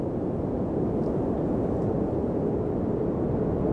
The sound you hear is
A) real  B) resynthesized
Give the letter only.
A